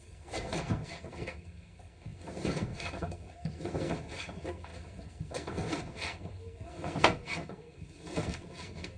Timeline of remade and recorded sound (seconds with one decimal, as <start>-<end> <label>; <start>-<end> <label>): 0.0-9.0 remade